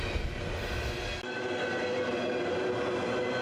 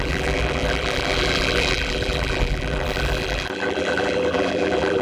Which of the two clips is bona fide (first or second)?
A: first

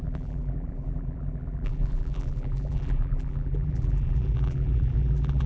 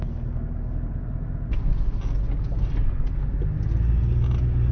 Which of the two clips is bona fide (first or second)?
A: second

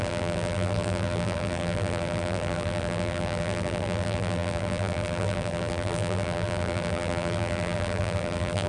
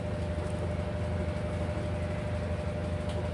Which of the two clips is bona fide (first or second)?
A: second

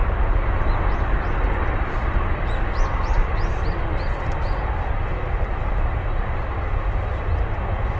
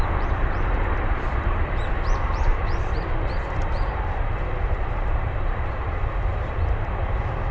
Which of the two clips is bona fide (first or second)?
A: first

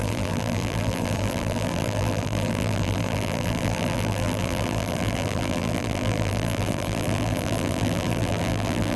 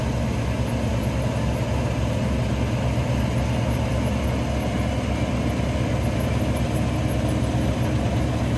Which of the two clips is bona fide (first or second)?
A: second